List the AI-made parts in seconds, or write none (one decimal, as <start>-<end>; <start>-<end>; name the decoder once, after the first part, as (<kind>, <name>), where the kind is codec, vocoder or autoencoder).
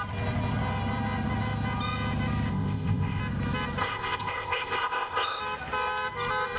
2.5-3.2 (codec, ZipCodec); 3.8-5.4